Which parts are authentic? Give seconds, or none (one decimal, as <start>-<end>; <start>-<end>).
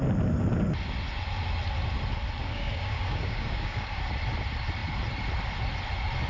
0.0-2.4; 4.0-6.3